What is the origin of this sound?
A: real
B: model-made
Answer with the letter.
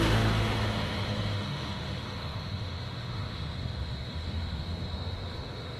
B